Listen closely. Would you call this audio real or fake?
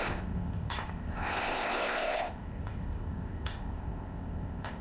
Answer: fake